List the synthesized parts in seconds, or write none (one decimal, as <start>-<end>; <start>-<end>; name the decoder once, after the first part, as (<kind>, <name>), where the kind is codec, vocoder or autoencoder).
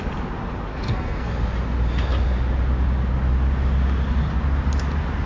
0.7-1.3 (codec, SNAC)